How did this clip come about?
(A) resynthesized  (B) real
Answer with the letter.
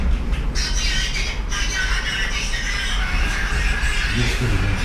B